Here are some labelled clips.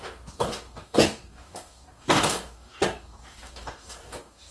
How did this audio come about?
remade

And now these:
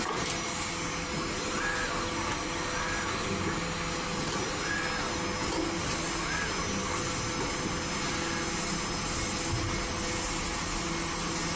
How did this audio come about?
recorded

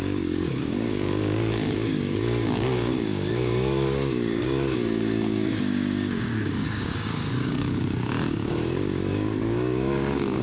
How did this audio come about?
remade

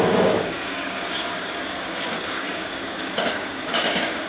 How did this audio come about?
remade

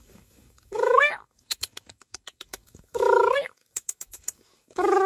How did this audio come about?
remade